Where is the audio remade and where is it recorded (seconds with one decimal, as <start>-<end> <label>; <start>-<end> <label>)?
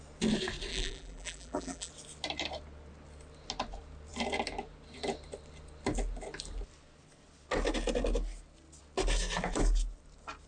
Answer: 0.0-0.7 recorded; 0.7-1.9 remade; 1.9-10.5 recorded